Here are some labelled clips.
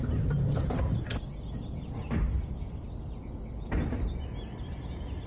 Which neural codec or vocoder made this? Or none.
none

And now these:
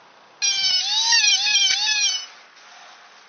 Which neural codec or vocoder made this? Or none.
none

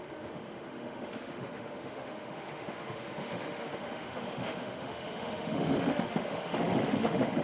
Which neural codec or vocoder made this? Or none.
autoencoder, DAC-VAE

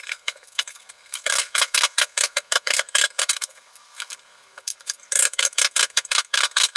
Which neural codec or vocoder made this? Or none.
codec, SNAC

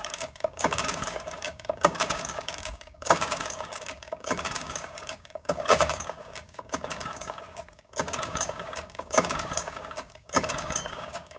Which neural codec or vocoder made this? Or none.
codec, DAC